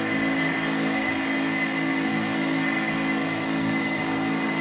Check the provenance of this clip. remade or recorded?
remade